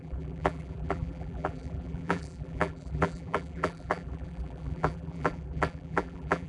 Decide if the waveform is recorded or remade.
remade